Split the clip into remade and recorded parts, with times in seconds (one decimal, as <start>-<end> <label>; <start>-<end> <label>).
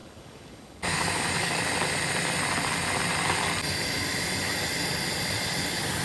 0.0-1.6 remade; 1.6-6.0 recorded